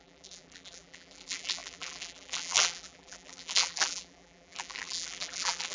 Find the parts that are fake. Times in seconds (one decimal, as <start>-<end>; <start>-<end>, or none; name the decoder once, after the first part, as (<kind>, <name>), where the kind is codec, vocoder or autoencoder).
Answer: 0.0-5.7 (vocoder, BigVGAN v2)